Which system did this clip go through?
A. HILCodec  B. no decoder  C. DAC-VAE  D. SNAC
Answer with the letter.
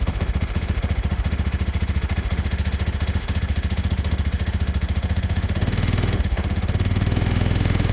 C